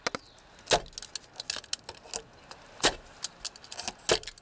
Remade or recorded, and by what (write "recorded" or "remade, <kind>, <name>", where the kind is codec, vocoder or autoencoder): recorded